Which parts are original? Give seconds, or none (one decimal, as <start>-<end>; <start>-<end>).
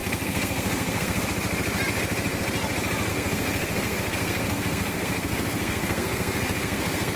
1.2-3.1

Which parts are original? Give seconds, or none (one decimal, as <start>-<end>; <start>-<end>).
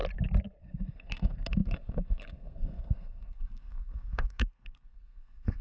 0.0-0.6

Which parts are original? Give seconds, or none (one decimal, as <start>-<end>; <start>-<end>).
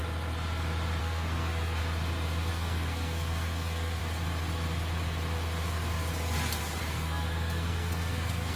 0.0-1.0; 1.8-2.5; 4.0-6.8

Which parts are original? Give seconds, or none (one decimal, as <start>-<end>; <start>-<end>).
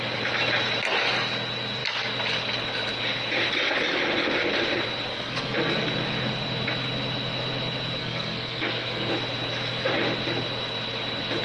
0.0-5.1; 5.8-8.0; 9.1-11.4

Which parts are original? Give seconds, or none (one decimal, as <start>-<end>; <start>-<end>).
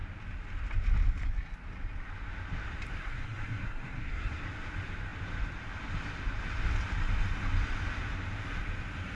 0.0-3.0; 4.4-9.1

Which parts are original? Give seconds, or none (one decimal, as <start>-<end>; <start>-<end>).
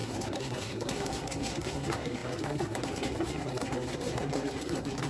none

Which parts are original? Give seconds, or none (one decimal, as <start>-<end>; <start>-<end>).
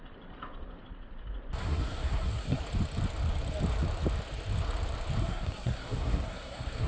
0.0-1.6; 2.6-5.2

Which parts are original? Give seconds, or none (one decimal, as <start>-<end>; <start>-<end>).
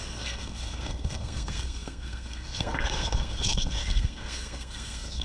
none